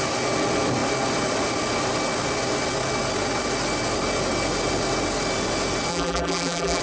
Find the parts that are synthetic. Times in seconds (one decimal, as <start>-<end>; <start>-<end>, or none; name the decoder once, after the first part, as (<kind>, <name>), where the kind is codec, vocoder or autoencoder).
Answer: 5.9-6.8 (vocoder, BigVGAN v2)